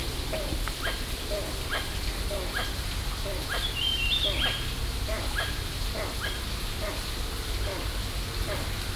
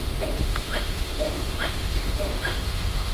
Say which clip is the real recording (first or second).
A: first